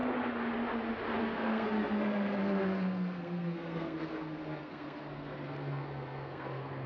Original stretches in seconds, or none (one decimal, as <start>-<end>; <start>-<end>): 0.0-1.2